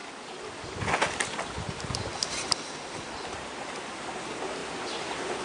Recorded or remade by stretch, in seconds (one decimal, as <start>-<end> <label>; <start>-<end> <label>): 0.0-5.4 recorded